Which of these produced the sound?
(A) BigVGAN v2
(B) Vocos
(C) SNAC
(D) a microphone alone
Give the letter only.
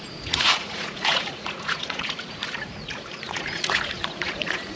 B